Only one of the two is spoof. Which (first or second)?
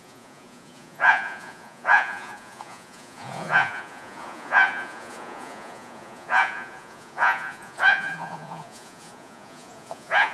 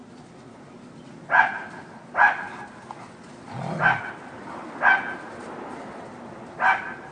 first